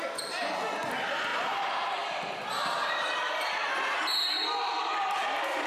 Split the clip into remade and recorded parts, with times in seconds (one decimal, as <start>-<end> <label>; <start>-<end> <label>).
0.0-1.3 recorded; 1.3-3.5 remade; 3.5-5.7 recorded